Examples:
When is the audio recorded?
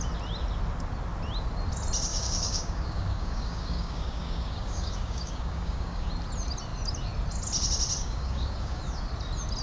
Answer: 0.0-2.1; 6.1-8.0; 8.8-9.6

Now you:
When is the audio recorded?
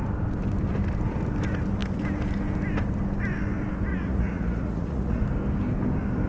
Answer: 0.0-3.9; 5.2-6.3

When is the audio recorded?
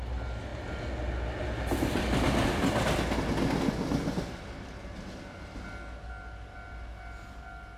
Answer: 0.0-7.8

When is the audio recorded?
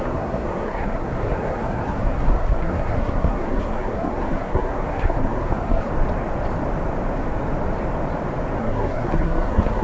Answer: 5.9-8.6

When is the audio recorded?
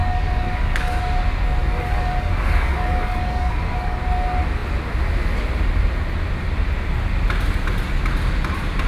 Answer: 1.0-1.6; 4.0-8.9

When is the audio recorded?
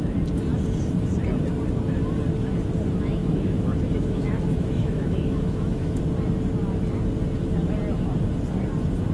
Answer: 0.0-3.2; 6.0-9.1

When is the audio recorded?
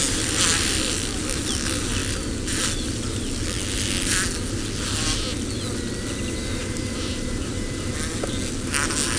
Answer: 0.0-6.6; 7.9-9.2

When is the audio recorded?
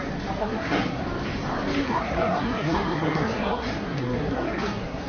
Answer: 0.0-0.4; 1.0-1.8